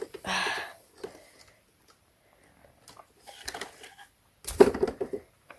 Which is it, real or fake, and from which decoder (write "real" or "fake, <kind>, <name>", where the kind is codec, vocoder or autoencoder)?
real